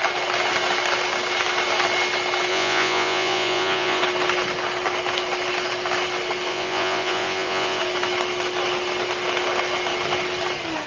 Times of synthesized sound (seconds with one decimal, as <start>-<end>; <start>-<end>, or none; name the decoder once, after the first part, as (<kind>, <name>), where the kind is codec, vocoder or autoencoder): 2.5-4.0 (vocoder, Vocos); 6.5-7.8